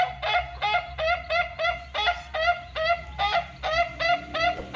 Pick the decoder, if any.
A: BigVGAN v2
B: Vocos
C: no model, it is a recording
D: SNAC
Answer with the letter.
C